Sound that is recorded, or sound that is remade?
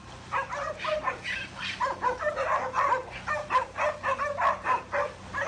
recorded